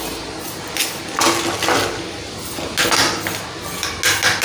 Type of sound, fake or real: real